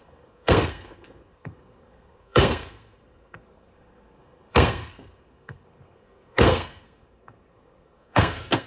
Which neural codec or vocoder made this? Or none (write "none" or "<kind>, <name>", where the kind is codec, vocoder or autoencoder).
codec, SNAC